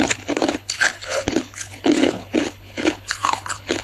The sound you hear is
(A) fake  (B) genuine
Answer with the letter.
A